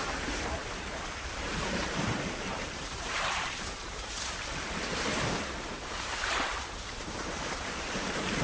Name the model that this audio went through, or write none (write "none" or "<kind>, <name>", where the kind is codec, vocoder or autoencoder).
vocoder, BigVGAN v2